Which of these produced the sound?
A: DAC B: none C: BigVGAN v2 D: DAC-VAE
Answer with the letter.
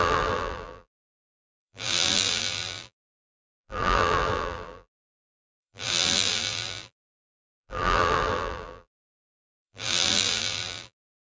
C